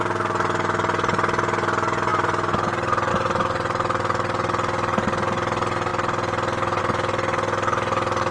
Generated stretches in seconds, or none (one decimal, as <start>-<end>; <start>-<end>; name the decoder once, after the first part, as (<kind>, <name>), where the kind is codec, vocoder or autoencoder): none